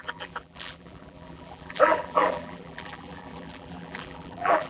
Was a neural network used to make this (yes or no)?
yes